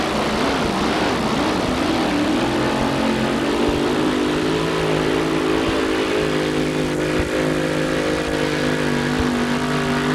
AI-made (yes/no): no